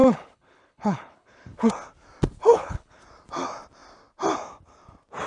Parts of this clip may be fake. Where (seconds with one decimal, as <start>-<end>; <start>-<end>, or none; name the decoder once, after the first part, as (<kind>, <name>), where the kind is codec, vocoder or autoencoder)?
0.0-1.7 (codec, HILCodec); 2.4-3.0